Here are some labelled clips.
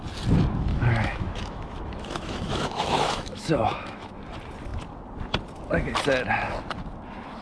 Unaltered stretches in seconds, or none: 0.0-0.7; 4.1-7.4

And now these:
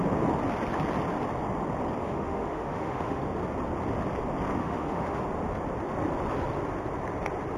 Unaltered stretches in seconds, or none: 0.0-2.0; 3.2-4.6; 5.2-7.6

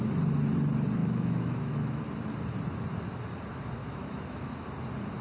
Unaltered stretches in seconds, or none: 0.0-1.0; 2.0-3.8; 4.5-5.2

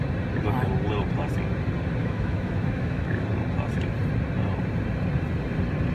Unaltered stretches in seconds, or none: 0.0-2.0; 3.2-5.9

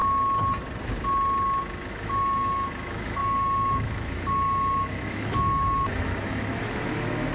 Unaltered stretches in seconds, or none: 0.0-1.9

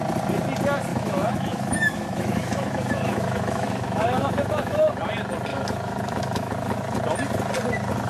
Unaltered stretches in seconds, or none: 0.0-0.9; 4.9-5.5; 6.5-8.1

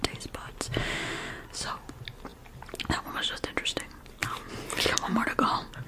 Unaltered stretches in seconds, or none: 0.0-0.8; 1.3-5.9

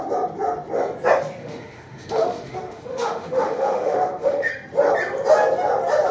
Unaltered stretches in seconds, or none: 0.0-1.4; 4.5-6.1